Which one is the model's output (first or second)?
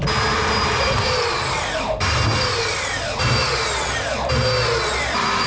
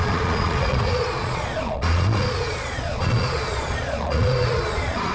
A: second